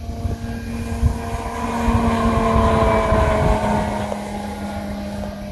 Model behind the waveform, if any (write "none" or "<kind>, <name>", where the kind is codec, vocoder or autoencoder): none